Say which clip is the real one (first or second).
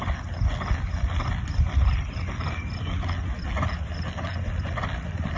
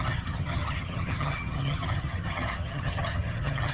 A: first